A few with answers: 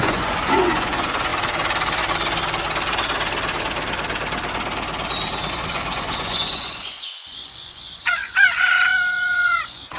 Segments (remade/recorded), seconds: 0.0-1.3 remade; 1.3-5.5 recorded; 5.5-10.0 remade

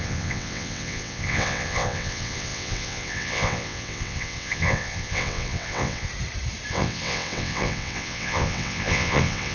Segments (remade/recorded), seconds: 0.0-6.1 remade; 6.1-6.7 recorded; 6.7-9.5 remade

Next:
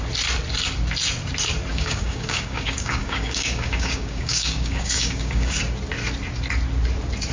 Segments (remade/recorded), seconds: 0.0-1.7 recorded; 1.7-5.6 remade; 5.6-7.3 recorded

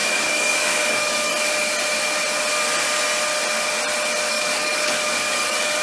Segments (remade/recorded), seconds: 0.0-1.3 remade; 1.3-4.3 recorded; 4.3-5.8 remade

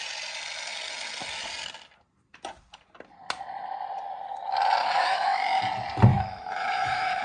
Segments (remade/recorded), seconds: 0.0-4.8 recorded; 4.8-5.6 remade; 5.6-6.1 recorded; 6.1-7.2 remade

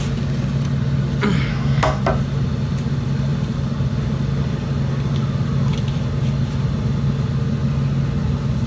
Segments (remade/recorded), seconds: 0.0-1.5 recorded; 1.5-2.0 remade; 2.0-8.7 recorded

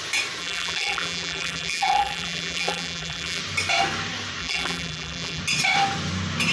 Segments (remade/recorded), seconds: 0.0-0.4 recorded; 0.4-3.4 remade; 3.4-4.4 recorded; 4.4-5.4 remade; 5.4-6.5 recorded